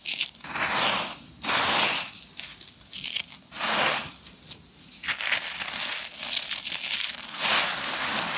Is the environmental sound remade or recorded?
recorded